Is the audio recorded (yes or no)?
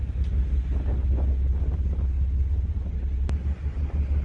yes